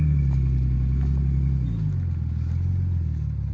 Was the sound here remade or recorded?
recorded